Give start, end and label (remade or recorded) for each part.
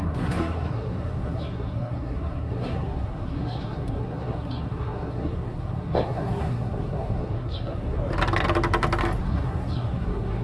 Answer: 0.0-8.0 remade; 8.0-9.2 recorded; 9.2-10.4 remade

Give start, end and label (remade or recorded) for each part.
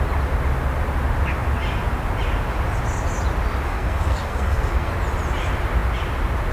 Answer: 0.0-3.7 recorded; 3.7-4.9 remade; 4.9-6.5 recorded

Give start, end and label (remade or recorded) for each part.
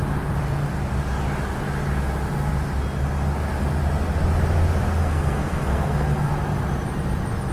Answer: 0.0-5.0 recorded; 5.0-6.3 remade; 6.3-7.5 recorded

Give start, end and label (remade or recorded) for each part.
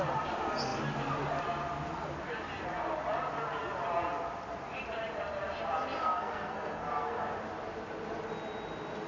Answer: 0.0-6.0 recorded; 6.0-7.2 remade; 7.2-9.1 recorded